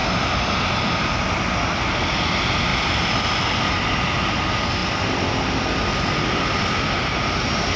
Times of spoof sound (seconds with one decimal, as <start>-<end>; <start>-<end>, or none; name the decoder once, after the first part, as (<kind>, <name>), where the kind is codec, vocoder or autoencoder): none